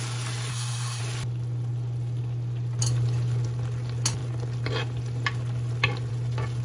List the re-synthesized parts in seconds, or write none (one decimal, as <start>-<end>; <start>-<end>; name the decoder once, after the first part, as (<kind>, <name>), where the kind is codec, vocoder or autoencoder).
0.5-1.0 (codec, SNAC)